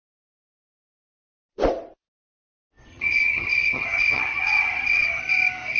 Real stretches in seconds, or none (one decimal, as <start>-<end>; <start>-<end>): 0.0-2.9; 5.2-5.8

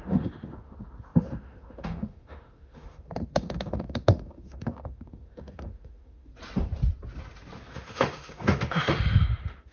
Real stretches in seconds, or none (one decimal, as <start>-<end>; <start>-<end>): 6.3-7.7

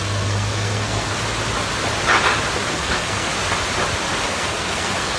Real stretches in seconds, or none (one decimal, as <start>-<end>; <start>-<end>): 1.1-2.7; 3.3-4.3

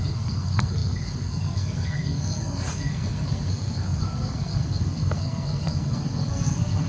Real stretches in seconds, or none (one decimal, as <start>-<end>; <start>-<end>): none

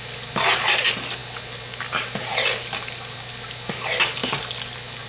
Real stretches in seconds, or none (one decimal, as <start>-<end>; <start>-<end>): 0.0-5.1